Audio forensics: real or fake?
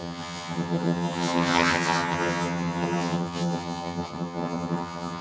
fake